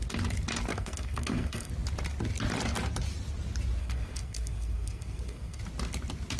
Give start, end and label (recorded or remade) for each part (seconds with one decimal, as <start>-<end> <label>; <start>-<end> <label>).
0.0-0.7 recorded; 0.7-1.7 remade; 1.7-3.8 recorded; 3.8-5.6 remade; 5.6-6.4 recorded